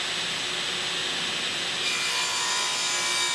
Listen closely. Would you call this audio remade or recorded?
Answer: recorded